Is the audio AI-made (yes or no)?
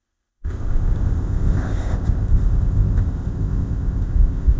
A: yes